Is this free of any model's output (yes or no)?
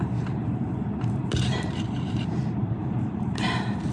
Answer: no